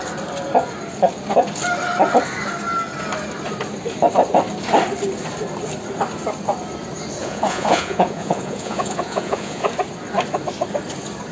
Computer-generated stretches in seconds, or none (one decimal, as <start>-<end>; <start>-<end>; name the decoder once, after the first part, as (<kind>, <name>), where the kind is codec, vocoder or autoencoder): 7.2-9.7 (vocoder, Vocos)